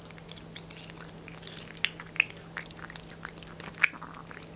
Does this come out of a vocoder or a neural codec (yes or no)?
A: no